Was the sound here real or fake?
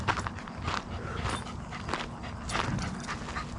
real